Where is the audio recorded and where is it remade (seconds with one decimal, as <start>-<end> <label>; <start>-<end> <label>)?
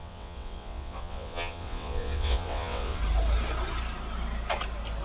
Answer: 0.0-3.0 remade; 3.0-5.0 recorded